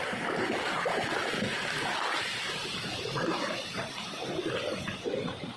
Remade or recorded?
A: remade